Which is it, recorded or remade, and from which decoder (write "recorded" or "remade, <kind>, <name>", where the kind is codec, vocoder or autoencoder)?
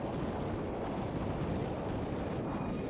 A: recorded